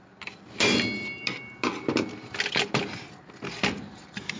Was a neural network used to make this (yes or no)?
no